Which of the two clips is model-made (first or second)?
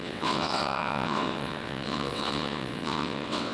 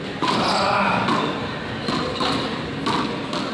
first